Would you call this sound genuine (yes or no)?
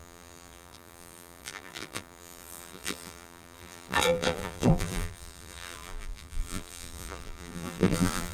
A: no